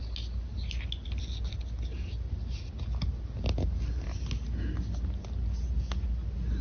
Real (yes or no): yes